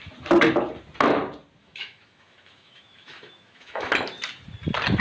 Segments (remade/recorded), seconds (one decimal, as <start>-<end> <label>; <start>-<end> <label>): 0.0-1.6 recorded; 1.6-3.9 remade; 3.9-5.0 recorded